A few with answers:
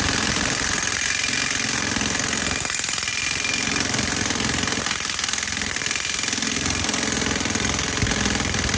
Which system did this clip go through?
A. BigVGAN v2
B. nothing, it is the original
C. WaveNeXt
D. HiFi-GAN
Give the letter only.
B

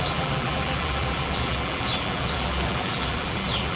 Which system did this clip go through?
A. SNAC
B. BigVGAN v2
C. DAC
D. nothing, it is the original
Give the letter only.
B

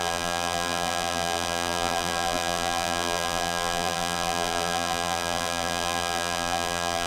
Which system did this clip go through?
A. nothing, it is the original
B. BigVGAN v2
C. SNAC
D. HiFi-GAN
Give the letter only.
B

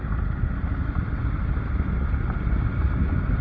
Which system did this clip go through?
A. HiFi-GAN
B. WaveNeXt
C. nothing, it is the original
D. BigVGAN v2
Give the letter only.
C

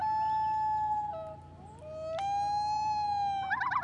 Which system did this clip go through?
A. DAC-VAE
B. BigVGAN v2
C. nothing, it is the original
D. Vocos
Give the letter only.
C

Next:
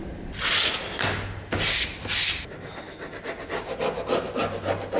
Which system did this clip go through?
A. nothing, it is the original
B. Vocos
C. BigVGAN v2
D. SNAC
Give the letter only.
A